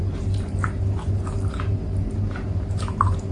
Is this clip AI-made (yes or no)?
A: yes